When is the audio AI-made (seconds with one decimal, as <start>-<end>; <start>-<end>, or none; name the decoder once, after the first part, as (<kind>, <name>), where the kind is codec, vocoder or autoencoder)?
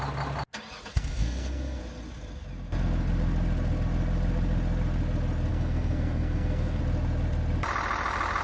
0.9-1.8 (codec, SNAC); 5.5-6.8